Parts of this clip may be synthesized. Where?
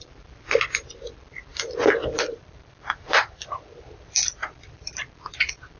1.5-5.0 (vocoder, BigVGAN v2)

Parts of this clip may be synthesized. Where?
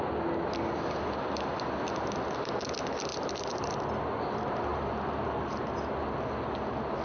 3.1-3.7 (vocoder, BigVGAN v2); 4.7-5.7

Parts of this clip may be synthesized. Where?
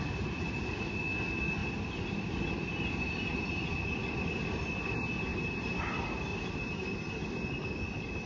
1.6-3.7 (vocoder, BigVGAN v2); 5.3-5.8; 6.3-7.1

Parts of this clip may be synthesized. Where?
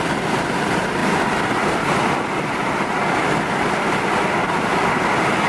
0.0-5.5 (vocoder, BigVGAN v2)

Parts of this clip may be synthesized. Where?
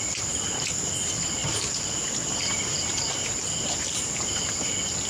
0.0-0.8 (vocoder, BigVGAN v2); 1.4-4.5